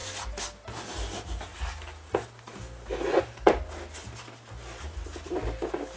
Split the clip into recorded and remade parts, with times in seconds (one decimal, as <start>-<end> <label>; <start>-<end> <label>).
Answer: 0.0-6.0 recorded